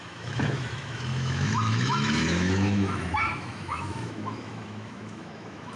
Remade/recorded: remade